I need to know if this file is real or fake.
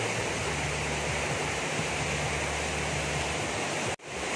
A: real